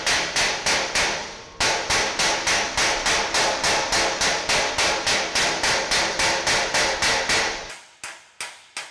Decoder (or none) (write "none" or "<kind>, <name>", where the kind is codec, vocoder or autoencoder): none